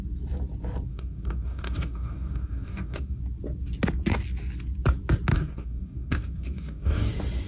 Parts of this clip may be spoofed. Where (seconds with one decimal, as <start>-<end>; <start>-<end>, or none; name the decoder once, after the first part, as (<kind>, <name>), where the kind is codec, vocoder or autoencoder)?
0.9-3.2 (codec, DAC); 5.3-7.1